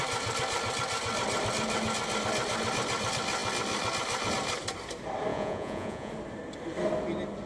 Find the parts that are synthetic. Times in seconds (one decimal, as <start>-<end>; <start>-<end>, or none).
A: 5.3-6.1